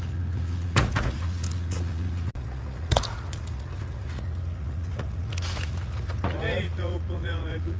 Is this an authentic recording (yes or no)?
no